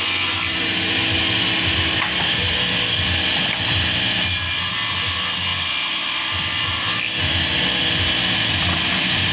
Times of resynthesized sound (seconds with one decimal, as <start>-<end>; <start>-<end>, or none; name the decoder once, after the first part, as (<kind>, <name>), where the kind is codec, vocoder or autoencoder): none